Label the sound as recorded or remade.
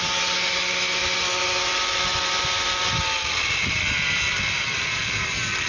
recorded